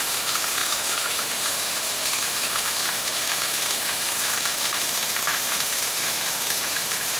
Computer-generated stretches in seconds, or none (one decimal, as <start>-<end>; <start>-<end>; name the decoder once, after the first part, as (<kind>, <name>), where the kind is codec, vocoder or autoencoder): 0.0-7.2 (autoencoder, DAC-VAE)